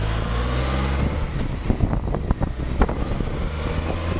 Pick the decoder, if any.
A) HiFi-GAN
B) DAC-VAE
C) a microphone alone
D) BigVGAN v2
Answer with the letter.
C